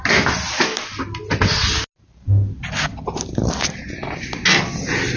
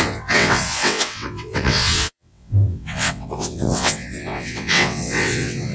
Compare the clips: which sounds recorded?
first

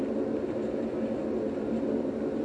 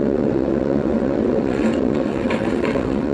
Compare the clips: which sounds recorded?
first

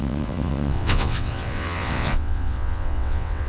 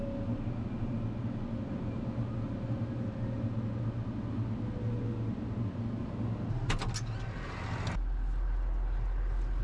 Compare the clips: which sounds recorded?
second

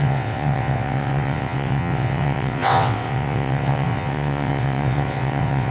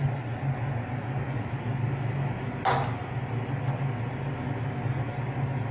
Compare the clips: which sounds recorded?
second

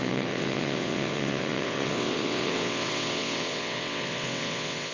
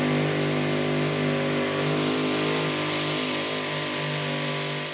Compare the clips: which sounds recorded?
second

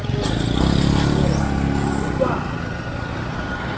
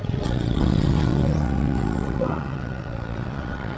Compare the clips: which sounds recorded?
first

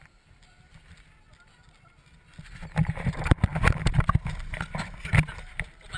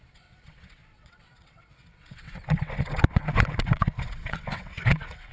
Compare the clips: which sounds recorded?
first